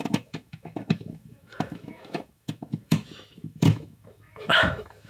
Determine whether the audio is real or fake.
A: fake